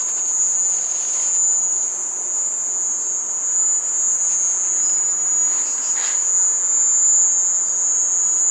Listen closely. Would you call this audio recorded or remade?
recorded